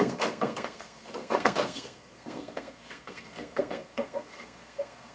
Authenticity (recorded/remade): remade